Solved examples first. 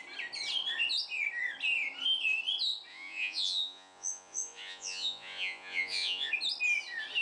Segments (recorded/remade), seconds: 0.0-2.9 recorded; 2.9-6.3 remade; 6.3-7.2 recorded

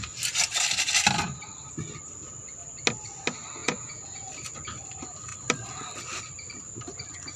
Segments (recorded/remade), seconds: 0.0-3.6 recorded; 3.6-4.3 remade; 4.3-7.4 recorded

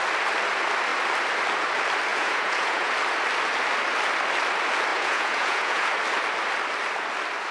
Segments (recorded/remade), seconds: 0.0-2.1 recorded; 2.1-2.9 remade; 2.9-4.9 recorded; 4.9-5.9 remade; 5.9-7.5 recorded